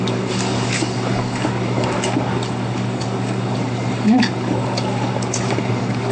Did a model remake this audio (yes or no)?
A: yes